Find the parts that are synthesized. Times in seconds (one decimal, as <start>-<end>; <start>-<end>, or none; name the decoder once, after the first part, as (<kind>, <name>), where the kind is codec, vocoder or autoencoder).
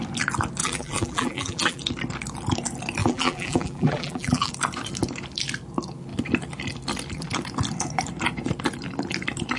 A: 0.6-1.8 (vocoder, BigVGAN v2); 3.0-4.5